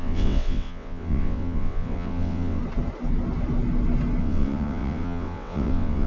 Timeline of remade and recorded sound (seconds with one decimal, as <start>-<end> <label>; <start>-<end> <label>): 0.0-2.6 remade; 2.6-4.2 recorded; 4.2-6.1 remade